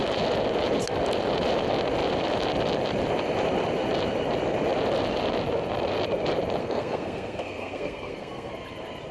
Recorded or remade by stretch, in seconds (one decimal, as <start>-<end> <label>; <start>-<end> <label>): 0.0-6.6 recorded; 6.6-8.5 remade; 8.5-9.1 recorded